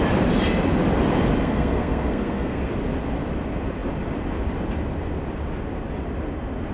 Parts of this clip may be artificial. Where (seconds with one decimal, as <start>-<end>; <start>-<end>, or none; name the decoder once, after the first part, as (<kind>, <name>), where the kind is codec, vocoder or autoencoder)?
1.4-2.7 (codec, SNAC)